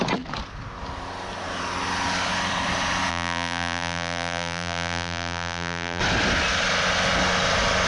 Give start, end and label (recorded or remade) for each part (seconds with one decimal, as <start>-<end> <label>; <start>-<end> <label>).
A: 0.0-3.1 recorded; 3.1-6.0 remade; 6.0-7.9 recorded